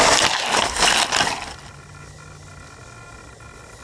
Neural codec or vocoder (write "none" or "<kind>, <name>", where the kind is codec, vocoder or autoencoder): none